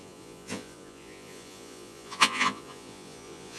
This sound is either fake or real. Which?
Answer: fake